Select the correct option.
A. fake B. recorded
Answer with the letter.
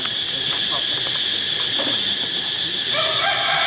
B